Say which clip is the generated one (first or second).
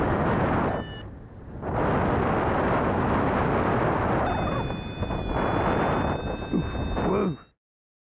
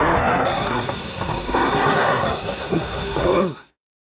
second